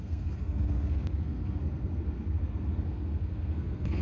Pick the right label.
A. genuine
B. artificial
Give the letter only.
B